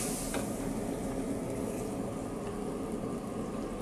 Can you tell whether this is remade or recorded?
recorded